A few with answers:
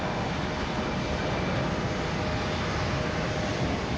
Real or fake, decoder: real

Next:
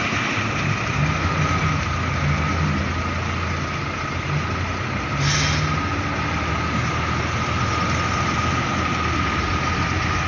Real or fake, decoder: real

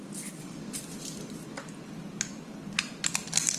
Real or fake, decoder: real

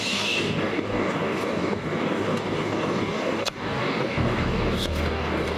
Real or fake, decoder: fake, codec, DAC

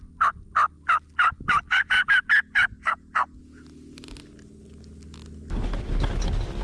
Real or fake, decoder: real